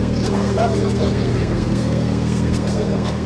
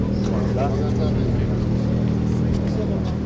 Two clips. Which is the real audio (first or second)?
second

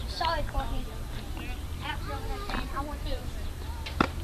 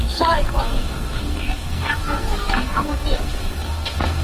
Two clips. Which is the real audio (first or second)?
first